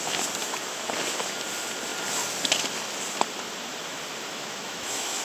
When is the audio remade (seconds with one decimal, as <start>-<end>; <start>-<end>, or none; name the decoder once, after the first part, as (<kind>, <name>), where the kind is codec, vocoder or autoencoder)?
0.4-0.9 (autoencoder, DAC-VAE); 4.3-5.2